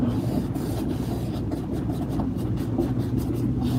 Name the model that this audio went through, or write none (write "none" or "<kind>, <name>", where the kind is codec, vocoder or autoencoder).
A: none